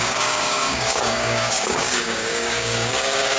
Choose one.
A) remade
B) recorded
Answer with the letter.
A